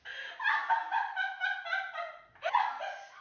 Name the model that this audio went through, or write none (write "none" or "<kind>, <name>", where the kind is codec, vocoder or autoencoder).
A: none